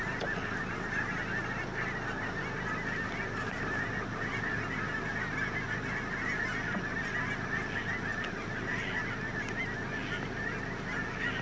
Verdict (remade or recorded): recorded